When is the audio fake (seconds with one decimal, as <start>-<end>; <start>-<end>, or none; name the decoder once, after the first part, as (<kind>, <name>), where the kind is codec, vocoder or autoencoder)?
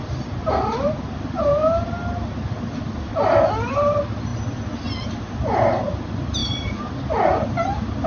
none